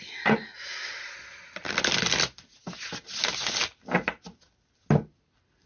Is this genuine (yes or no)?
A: yes